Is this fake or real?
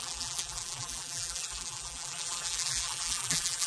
fake